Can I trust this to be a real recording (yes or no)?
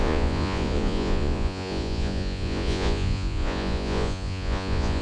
no